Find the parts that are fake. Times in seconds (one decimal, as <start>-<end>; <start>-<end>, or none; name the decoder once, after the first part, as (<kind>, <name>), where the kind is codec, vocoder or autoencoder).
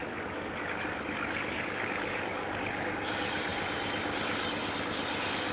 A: 0.0-3.1 (codec, DAC)